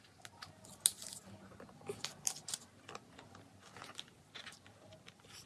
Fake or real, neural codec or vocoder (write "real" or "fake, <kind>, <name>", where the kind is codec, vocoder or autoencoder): real